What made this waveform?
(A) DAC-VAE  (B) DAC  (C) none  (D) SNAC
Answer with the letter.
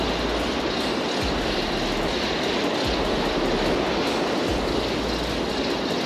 C